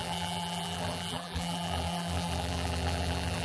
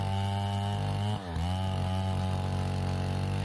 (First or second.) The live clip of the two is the second